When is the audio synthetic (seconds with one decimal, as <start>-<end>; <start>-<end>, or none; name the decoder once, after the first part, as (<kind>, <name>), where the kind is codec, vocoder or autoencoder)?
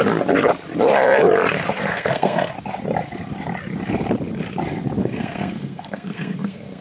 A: 1.9-2.5 (codec, SNAC); 5.0-6.8